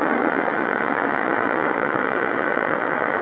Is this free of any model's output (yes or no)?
no